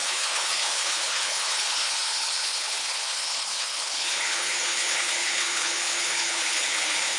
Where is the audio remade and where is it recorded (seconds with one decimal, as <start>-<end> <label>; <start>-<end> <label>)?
0.0-7.2 remade